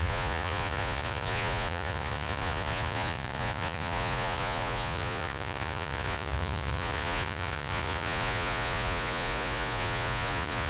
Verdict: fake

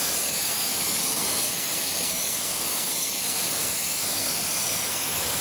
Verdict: fake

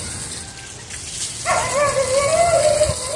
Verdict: real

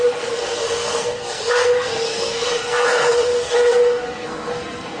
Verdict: fake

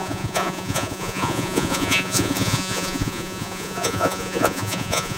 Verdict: fake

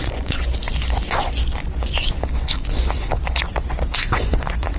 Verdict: fake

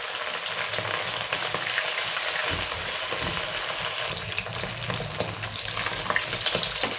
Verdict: real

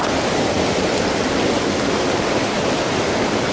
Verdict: real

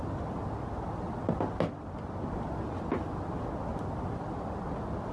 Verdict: real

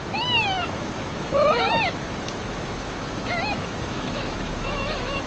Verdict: fake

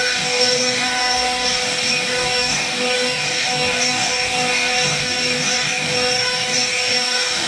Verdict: fake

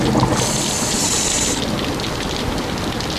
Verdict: real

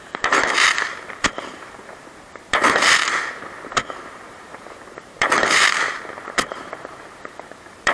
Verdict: fake